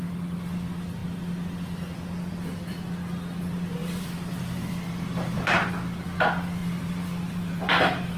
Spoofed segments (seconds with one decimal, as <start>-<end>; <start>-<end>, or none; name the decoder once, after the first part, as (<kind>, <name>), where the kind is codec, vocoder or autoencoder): 3.8-5.7 (vocoder, BigVGAN v2); 6.6-8.2